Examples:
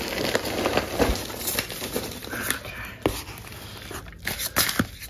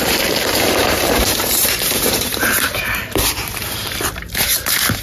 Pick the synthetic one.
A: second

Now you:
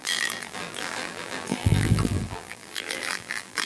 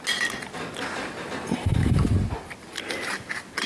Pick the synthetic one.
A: first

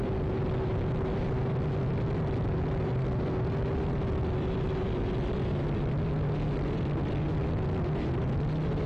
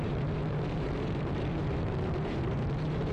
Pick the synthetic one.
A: second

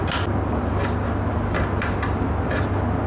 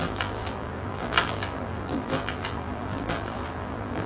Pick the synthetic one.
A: second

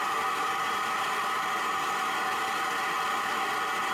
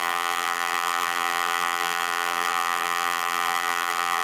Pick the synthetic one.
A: second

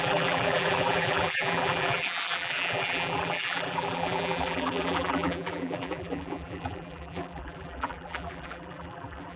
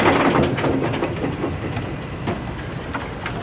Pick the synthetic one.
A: first